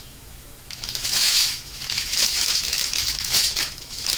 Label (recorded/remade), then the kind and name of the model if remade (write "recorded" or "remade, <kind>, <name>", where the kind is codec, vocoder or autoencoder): remade, autoencoder, DAC-VAE